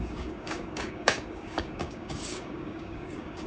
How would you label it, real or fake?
fake